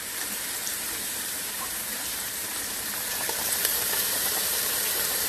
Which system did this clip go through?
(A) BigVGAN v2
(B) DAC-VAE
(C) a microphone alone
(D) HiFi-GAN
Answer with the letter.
A